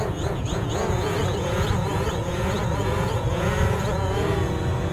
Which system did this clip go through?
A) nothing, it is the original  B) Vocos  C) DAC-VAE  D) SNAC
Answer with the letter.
B